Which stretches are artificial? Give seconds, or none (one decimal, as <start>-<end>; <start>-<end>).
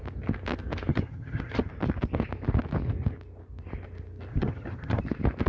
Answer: 0.9-1.7; 4.3-5.0